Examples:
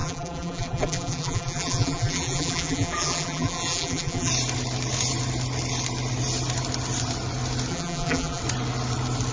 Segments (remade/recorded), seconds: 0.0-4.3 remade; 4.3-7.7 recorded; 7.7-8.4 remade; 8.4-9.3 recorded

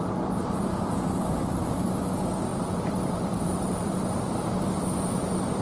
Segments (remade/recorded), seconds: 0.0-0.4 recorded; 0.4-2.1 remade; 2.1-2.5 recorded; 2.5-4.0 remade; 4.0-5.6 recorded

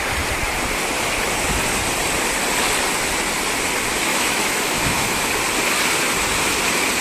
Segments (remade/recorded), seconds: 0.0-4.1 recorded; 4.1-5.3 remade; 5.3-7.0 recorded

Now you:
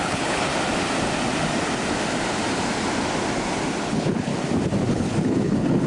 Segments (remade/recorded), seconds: 0.0-0.5 remade; 0.5-3.8 recorded; 3.8-4.3 remade; 4.3-4.9 recorded; 4.9-5.9 remade

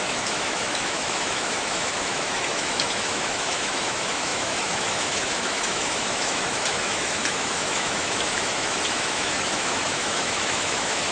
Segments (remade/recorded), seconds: 0.0-11.1 remade